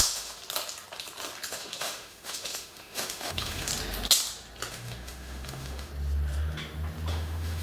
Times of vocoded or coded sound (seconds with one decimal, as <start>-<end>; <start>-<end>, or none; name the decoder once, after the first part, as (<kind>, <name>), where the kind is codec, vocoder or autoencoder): 0.0-0.4 (autoencoder, DAC-VAE); 1.5-3.7; 4.7-5.9; 7.1-7.6